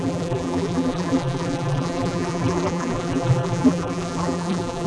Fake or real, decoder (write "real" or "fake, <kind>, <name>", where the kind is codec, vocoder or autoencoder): fake, vocoder, BigVGAN v2